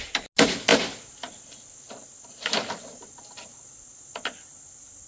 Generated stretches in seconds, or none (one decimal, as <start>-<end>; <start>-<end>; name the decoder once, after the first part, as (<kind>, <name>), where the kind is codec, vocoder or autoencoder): none